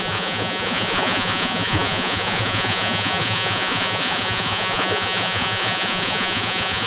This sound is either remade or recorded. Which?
remade